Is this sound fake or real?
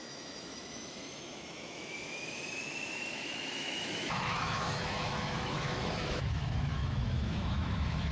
fake